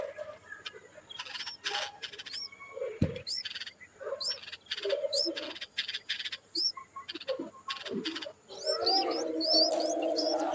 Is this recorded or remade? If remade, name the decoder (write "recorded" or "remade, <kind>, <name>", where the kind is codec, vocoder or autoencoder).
recorded